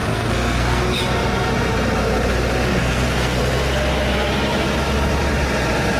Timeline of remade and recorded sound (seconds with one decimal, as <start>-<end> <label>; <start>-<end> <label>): 0.0-1.0 remade; 1.0-2.7 recorded; 2.7-3.4 remade; 3.4-6.0 recorded